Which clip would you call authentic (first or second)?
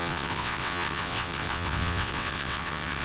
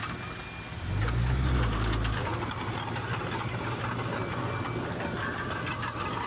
second